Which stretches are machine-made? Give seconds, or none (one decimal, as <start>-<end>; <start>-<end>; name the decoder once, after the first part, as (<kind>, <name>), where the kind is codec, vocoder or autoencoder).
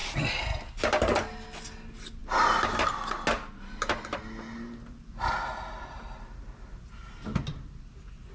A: none